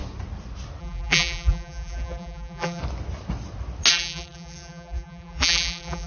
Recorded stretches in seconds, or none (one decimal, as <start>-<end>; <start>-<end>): 0.0-0.8; 2.8-3.9